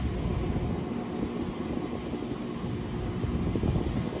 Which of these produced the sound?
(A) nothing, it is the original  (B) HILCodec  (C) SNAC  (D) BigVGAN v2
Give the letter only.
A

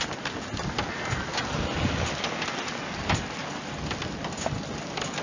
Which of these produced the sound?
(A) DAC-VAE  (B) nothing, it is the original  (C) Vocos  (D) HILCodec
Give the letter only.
B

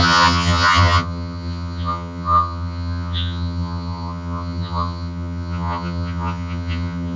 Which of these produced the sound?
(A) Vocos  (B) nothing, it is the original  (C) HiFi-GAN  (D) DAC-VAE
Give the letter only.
C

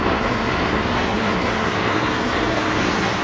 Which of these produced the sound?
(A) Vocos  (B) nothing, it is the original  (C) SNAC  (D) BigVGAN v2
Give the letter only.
C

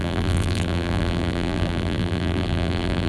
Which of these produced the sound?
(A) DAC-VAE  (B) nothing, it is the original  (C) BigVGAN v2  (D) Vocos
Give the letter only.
C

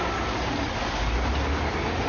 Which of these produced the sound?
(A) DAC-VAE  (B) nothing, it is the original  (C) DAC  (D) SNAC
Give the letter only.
B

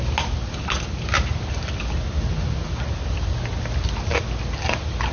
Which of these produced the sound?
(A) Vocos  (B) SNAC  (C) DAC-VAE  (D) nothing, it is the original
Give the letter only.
D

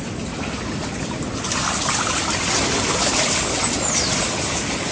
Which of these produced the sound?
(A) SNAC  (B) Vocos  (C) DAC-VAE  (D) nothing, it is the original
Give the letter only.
D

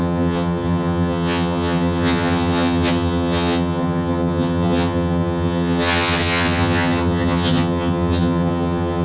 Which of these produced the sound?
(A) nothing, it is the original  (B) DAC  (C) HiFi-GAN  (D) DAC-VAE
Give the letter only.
C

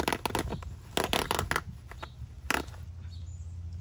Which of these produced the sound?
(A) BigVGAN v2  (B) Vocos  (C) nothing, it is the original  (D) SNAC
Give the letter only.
C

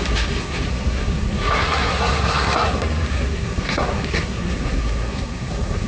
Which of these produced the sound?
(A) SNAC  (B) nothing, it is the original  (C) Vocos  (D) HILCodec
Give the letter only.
A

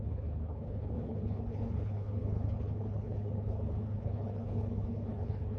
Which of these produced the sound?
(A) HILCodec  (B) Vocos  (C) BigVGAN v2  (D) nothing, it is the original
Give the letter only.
A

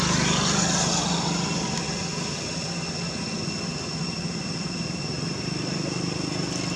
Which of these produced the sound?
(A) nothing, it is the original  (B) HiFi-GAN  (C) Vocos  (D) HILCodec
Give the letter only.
A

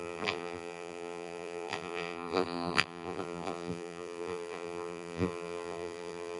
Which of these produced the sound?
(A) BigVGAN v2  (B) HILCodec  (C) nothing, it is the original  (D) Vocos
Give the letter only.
A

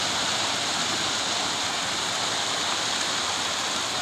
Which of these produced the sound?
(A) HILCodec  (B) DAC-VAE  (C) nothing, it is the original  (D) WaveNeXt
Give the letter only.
C